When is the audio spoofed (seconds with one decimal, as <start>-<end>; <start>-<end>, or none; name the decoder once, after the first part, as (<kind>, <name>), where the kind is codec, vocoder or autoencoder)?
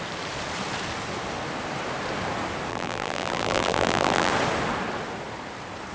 2.7-4.3 (vocoder, BigVGAN v2)